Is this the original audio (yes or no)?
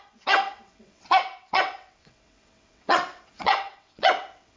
no